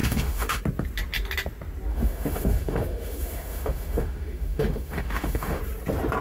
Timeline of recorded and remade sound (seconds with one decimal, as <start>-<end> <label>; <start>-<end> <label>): 0.0-0.6 remade; 0.6-1.9 recorded; 1.9-5.6 remade; 5.6-6.2 recorded